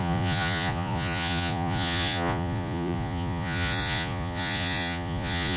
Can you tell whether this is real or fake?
fake